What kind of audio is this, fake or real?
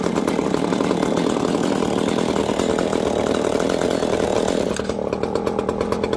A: real